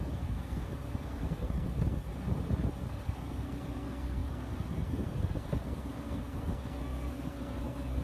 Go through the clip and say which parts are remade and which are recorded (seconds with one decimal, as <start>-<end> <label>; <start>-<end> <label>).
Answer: 0.0-2.1 remade; 2.1-2.8 recorded; 2.8-8.0 remade